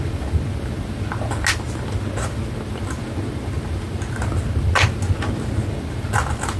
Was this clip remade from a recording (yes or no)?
no